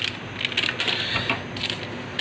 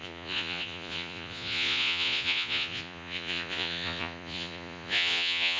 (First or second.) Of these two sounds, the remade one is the second